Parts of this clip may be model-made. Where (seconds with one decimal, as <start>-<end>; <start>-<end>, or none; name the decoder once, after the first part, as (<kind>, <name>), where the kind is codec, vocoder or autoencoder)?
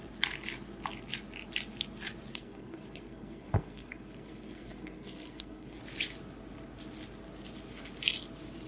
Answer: 2.3-5.8 (codec, SNAC)